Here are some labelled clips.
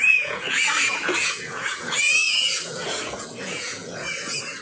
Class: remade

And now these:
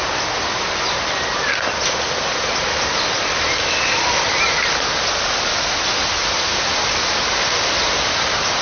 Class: recorded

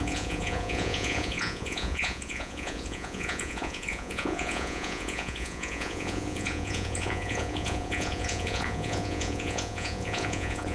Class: remade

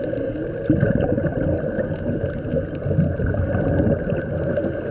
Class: recorded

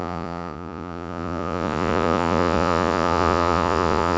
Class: remade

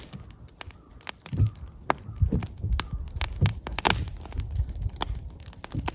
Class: recorded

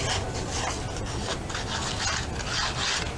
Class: recorded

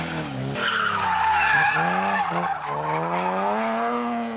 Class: recorded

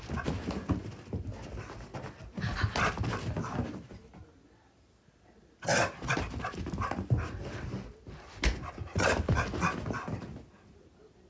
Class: recorded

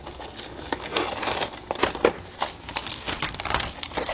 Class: recorded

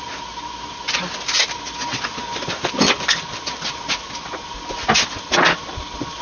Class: recorded